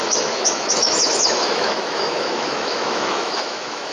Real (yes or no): no